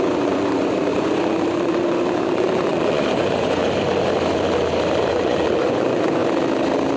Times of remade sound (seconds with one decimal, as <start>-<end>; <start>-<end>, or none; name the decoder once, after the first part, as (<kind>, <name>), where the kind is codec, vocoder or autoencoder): 0.0-3.6 (vocoder, Vocos); 5.1-6.2